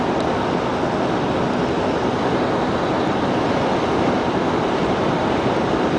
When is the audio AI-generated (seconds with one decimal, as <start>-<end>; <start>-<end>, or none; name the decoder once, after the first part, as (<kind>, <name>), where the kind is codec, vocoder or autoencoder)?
none